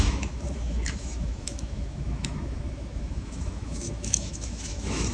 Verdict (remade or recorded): remade